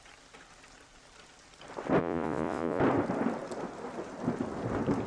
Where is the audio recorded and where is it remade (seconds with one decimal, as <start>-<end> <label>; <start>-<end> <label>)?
0.0-2.0 recorded; 2.0-2.8 remade; 2.8-5.1 recorded